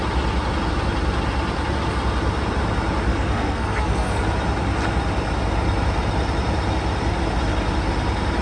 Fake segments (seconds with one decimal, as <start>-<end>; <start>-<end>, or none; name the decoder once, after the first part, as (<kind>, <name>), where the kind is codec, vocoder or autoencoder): 3.1-4.2 (codec, SNAC)